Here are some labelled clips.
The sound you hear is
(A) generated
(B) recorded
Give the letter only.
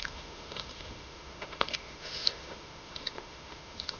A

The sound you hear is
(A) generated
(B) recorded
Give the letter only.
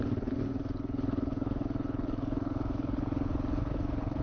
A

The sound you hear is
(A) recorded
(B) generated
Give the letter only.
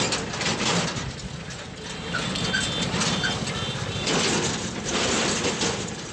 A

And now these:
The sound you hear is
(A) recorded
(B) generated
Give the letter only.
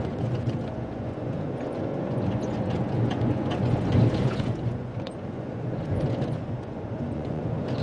B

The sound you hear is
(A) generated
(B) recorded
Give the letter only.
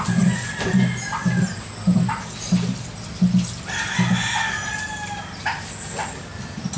B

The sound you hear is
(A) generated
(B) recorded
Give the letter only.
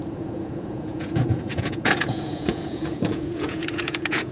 A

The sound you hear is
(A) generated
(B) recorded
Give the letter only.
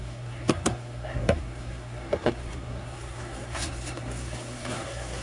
A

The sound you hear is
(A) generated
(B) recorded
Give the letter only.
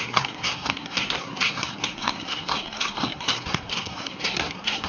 A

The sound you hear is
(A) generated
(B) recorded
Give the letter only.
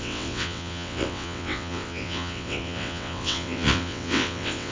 A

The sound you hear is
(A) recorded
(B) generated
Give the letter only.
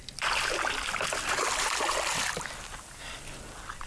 A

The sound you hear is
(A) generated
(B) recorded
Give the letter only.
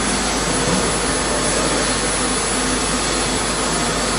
B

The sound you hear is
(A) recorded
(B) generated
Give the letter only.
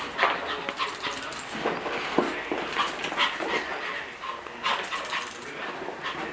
A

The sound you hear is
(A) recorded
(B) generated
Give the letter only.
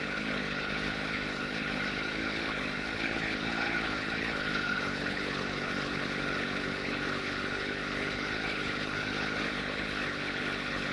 B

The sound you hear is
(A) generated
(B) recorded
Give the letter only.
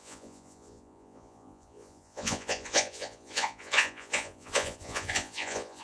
A